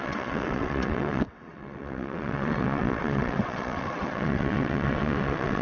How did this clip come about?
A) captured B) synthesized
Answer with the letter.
B